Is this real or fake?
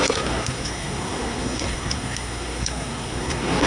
fake